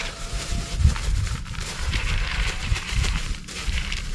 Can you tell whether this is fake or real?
fake